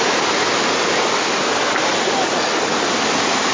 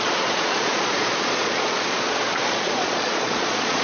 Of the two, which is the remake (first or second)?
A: second